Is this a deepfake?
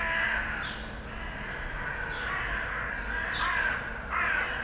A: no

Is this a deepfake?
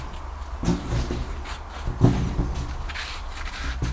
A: no